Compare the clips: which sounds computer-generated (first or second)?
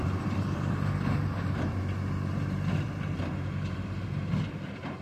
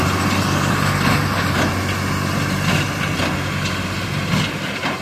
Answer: first